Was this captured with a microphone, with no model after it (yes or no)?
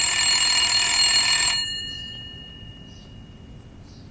no